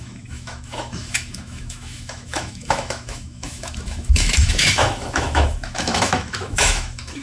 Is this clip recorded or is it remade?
remade